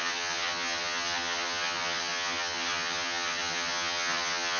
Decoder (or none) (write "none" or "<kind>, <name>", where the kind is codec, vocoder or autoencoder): vocoder, HiFi-GAN